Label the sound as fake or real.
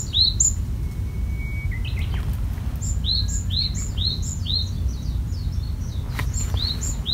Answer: real